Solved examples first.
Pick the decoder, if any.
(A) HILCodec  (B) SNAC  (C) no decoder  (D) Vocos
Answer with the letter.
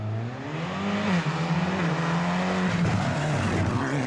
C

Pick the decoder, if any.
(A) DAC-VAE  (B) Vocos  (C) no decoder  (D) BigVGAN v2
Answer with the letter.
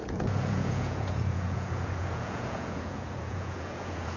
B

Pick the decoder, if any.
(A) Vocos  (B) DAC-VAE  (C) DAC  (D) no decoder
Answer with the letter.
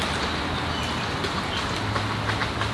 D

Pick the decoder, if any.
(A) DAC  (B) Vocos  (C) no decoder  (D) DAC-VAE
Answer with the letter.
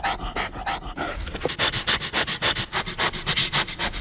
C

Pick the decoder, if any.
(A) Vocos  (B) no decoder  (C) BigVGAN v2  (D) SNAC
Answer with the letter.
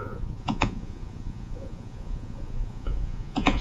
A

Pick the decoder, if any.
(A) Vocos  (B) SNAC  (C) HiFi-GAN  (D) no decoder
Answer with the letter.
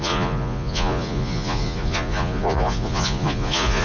A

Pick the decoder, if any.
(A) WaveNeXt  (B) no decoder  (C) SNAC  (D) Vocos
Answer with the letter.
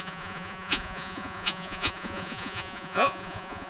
D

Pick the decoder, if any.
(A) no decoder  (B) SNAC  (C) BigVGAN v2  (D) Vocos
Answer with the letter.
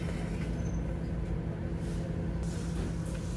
A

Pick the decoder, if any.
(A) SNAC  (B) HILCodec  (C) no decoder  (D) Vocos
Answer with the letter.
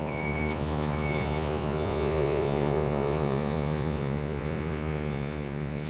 D